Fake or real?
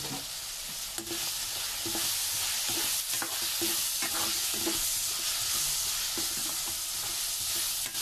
real